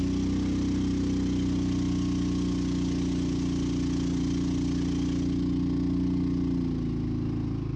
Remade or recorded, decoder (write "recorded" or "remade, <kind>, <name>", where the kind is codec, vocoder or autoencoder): recorded